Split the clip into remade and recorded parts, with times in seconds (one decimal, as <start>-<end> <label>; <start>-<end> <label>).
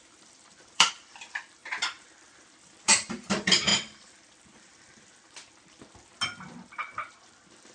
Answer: 0.0-1.6 remade; 1.6-2.4 recorded; 2.4-5.4 remade; 5.4-7.1 recorded; 7.1-7.7 remade